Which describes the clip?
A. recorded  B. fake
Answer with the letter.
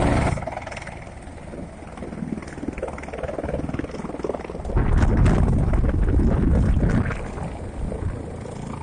A